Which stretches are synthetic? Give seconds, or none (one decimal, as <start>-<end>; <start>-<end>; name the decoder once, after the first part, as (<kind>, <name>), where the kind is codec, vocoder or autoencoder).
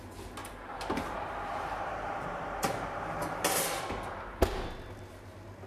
0.4-3.4 (vocoder, BigVGAN v2)